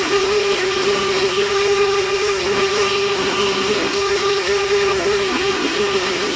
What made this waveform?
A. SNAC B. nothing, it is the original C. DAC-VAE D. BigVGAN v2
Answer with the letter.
A